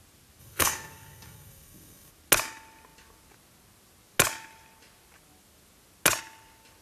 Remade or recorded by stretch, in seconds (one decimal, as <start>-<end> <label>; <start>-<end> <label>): 0.0-0.4 recorded; 0.4-2.1 remade; 2.1-6.8 recorded